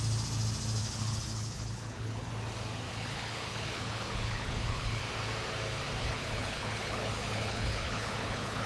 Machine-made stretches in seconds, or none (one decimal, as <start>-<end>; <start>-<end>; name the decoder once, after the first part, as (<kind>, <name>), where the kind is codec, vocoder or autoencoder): 0.8-2.3 (codec, HILCodec); 2.9-5.0; 6.0-8.7